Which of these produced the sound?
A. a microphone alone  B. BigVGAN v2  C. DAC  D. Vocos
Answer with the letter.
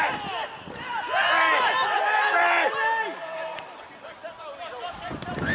A